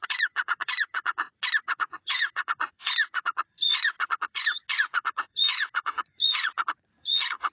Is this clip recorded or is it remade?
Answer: remade